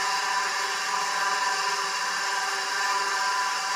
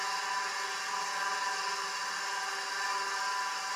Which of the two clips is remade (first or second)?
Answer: first